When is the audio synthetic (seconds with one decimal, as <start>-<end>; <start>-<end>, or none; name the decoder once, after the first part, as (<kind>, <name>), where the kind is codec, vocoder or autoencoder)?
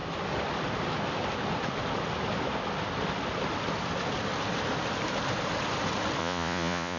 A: 6.2-7.0 (vocoder, Vocos)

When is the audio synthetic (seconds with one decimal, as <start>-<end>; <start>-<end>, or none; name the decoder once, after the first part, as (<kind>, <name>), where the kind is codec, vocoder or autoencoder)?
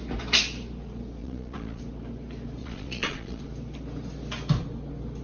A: 1.2-1.8 (vocoder, Vocos); 2.6-3.4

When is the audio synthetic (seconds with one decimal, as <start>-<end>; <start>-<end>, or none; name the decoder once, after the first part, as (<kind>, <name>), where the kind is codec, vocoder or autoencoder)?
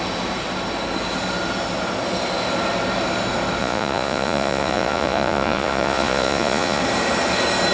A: 3.6-6.8 (vocoder, Vocos)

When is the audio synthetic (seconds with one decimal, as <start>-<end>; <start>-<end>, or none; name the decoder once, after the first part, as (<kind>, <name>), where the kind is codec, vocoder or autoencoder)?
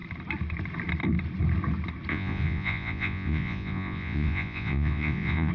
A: 2.1-5.5 (vocoder, Vocos)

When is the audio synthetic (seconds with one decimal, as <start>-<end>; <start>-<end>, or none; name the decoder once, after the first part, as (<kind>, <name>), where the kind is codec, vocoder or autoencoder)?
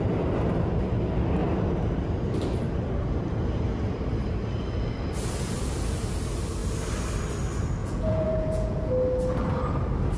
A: 7.8-8.9 (vocoder, Vocos)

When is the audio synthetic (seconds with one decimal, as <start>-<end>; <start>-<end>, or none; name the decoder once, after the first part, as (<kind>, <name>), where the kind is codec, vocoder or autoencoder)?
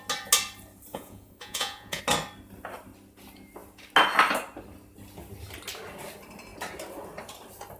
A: 0.9-2.0 (vocoder, Vocos)